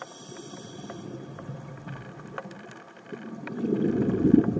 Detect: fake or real real